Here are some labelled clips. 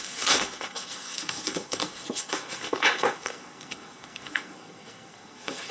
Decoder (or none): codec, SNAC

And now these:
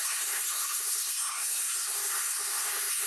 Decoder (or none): codec, SNAC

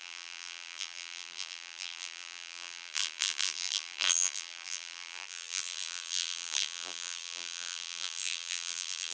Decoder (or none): vocoder, BigVGAN v2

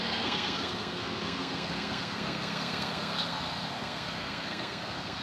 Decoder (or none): codec, SNAC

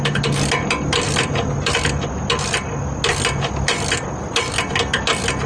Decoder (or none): none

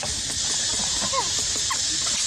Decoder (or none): none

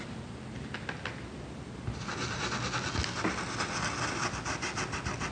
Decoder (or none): none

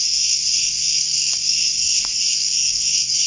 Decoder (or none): codec, SNAC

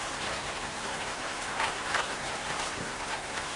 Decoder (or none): codec, SNAC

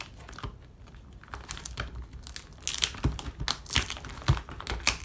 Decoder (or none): none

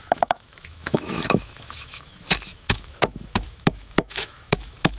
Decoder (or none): autoencoder, DAC-VAE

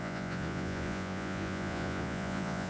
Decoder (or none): vocoder, Vocos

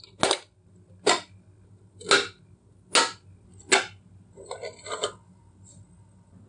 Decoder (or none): none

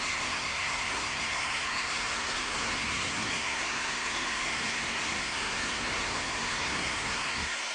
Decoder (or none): codec, SNAC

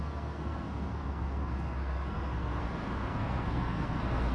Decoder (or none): codec, SNAC